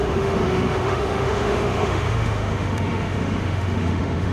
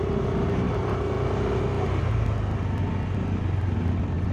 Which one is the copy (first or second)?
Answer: first